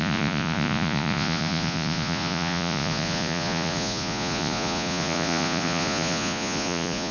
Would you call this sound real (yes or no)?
no